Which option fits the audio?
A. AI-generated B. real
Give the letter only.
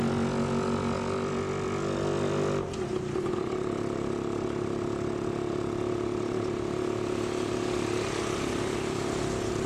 B